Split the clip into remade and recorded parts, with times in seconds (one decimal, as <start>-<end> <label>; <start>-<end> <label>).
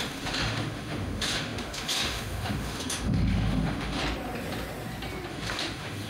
0.0-4.0 remade; 4.0-5.3 recorded; 5.3-6.1 remade